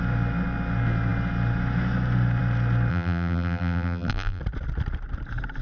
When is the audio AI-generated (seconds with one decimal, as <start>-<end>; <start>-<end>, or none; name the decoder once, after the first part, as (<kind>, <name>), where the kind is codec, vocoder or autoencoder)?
2.9-4.4 (vocoder, BigVGAN v2)